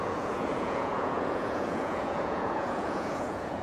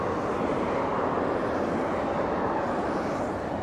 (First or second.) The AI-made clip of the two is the first